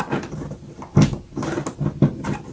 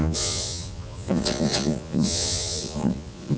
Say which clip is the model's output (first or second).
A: second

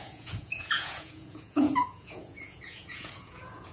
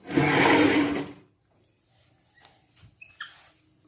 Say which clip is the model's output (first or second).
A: first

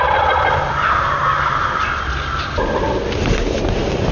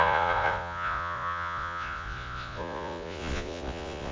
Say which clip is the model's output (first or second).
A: second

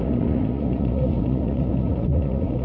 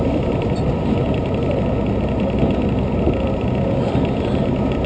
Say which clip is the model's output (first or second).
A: first